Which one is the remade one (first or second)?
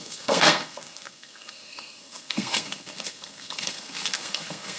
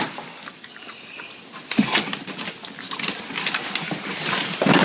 first